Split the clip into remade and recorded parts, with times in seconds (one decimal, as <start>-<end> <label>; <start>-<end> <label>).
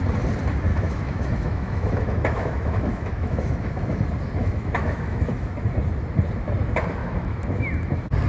0.0-0.7 recorded; 0.7-4.0 remade; 4.0-4.4 recorded; 4.4-5.5 remade; 5.5-7.0 recorded; 7.0-7.7 remade; 7.7-8.3 recorded